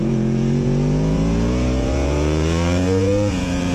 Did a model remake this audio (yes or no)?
yes